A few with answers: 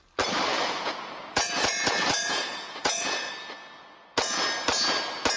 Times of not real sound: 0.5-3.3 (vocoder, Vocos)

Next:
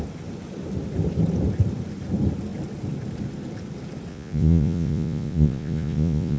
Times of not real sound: 4.1-6.4 (vocoder, Vocos)

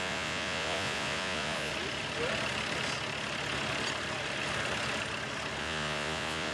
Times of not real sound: 0.0-1.7 (vocoder, Vocos); 5.6-6.5

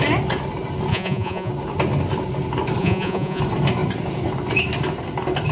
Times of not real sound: 0.9-1.5 (vocoder, Vocos); 2.8-3.4

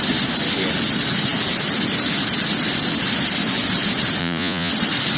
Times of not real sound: 4.2-4.7 (vocoder, Vocos)

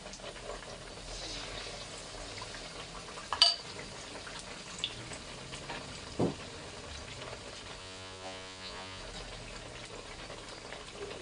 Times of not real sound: 7.8-9.0 (vocoder, Vocos)

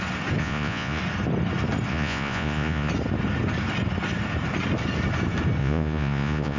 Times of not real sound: 0.4-1.0 (vocoder, Vocos); 1.9-2.9; 5.6-6.6